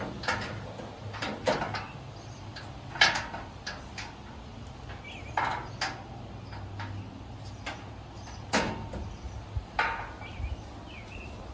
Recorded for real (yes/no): yes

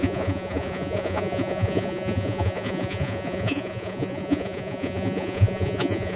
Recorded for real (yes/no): no